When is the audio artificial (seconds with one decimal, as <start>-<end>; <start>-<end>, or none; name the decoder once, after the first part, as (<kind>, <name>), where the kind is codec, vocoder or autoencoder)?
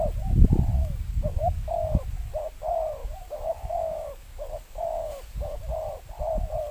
0.8-1.9 (codec, DAC); 3.0-5.6